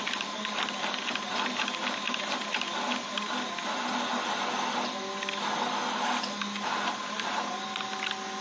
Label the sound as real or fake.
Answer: real